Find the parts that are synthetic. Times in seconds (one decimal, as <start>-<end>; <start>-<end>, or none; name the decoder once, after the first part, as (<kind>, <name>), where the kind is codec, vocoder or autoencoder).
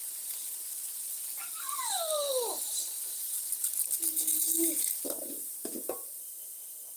6.2-7.0 (autoencoder, DAC-VAE)